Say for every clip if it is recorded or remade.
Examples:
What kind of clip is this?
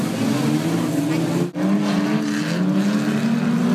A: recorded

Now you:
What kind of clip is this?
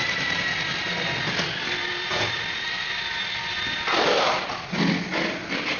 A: recorded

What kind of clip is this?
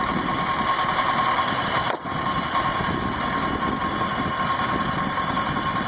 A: recorded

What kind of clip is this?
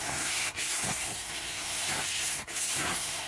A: remade